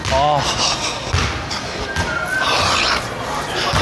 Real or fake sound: real